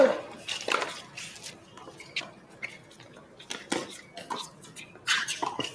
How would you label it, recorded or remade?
recorded